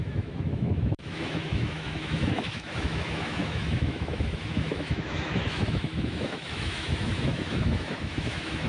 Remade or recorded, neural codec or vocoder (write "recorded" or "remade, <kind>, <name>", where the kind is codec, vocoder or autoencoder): remade, autoencoder, DAC-VAE